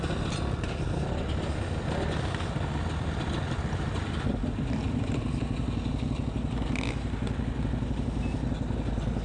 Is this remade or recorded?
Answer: recorded